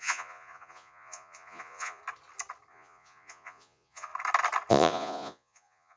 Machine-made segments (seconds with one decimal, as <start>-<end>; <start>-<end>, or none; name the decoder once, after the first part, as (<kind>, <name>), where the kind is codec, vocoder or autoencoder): 0.0-2.0 (vocoder, Vocos); 2.7-4.1; 4.7-6.0